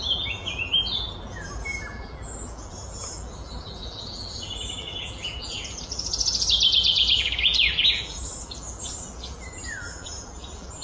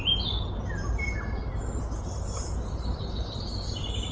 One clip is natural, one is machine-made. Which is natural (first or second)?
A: second